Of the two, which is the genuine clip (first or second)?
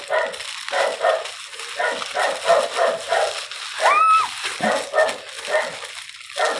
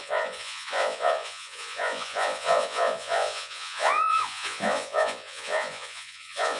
first